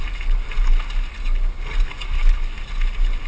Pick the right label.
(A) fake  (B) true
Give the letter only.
B